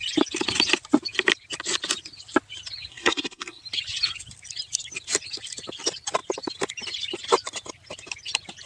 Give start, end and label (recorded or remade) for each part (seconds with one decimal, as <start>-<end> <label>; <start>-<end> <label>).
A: 0.0-2.9 recorded; 2.9-3.6 remade; 3.6-8.7 recorded